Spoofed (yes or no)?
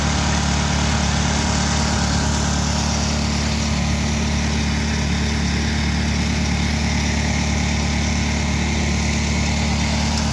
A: no